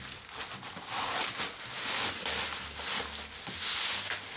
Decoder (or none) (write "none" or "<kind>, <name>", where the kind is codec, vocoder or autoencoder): none